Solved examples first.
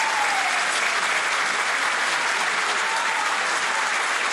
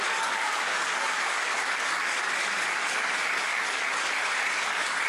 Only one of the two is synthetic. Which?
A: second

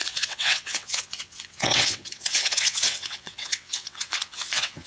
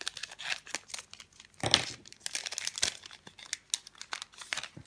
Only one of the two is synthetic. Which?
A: first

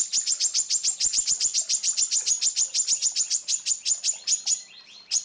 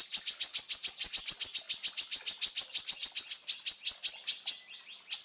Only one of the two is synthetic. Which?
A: first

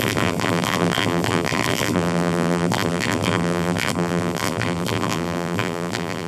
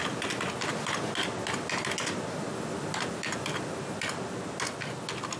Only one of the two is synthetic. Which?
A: first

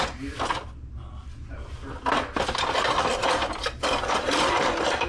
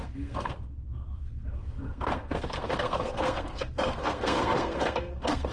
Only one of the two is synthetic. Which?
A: second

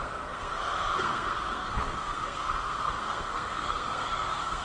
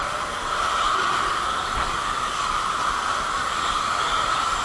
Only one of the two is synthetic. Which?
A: first